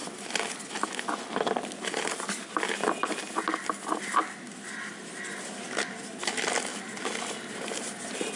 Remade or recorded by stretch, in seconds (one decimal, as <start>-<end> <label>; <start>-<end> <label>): 0.0-8.4 recorded